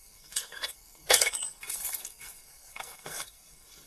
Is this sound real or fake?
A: fake